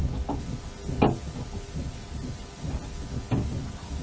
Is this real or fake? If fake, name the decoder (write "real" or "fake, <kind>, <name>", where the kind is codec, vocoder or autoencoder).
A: real